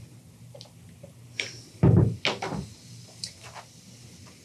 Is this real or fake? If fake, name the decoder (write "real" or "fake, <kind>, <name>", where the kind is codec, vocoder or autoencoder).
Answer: real